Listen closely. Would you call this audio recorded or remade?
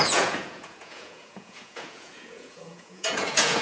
remade